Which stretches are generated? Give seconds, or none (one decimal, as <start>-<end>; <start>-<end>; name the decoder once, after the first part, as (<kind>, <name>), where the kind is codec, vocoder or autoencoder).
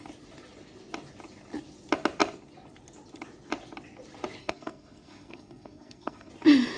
4.4-6.3 (codec, SNAC)